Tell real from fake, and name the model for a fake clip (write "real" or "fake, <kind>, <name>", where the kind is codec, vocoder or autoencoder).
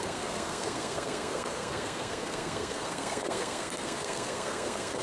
fake, codec, SNAC